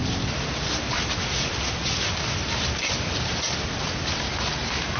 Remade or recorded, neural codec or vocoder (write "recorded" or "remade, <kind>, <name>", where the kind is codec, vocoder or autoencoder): recorded